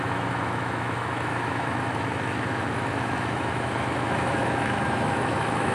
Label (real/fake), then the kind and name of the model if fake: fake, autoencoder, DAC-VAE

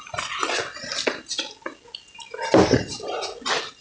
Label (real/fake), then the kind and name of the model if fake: real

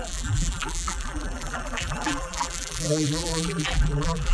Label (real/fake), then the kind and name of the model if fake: fake, vocoder, BigVGAN v2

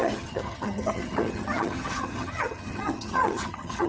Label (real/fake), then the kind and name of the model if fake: fake, vocoder, HiFi-GAN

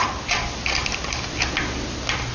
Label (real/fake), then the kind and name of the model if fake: real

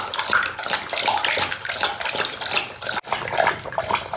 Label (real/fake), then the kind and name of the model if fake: real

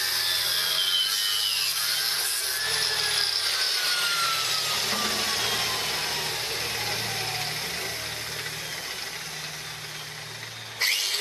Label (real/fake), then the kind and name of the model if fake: real